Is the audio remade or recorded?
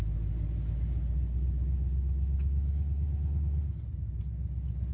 recorded